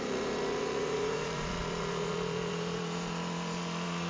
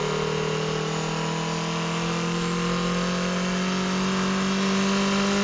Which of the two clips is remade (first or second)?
first